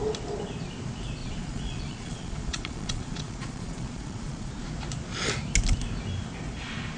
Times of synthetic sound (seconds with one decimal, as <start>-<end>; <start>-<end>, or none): 1.2-4.5